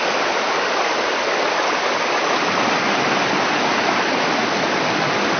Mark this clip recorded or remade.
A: recorded